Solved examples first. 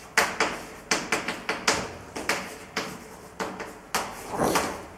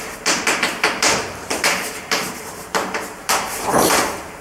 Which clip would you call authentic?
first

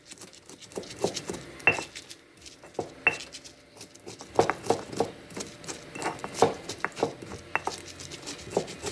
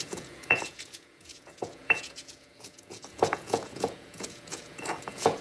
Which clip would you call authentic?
first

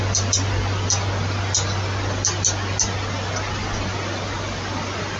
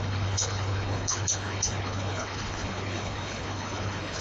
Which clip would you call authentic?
first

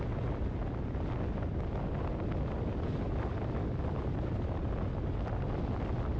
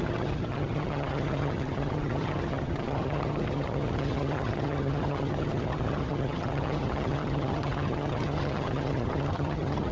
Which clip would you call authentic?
first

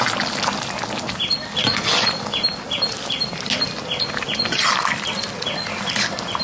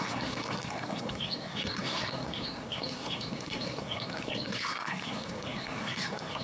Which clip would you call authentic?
first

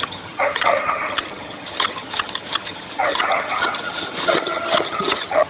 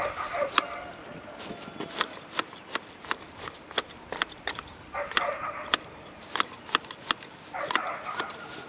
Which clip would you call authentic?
second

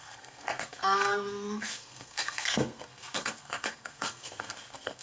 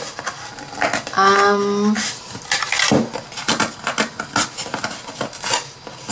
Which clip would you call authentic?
second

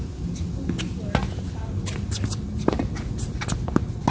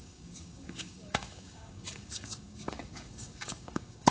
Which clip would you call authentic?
first